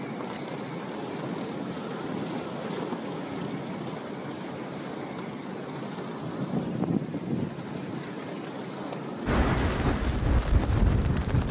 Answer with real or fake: real